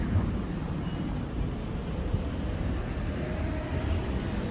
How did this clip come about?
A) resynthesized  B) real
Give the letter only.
B